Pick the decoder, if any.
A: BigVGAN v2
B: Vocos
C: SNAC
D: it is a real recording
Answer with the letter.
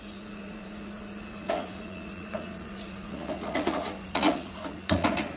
B